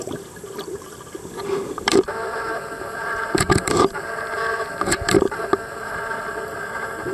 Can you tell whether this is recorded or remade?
remade